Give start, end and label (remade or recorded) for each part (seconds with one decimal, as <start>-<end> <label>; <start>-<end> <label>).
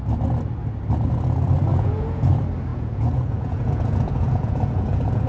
0.0-1.7 recorded; 1.7-2.3 remade; 2.3-2.7 recorded; 2.7-5.3 remade